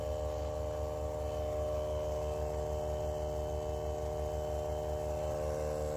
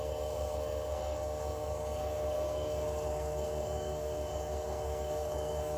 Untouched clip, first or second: first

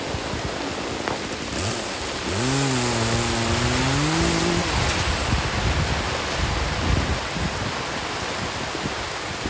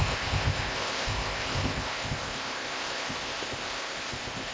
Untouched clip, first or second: first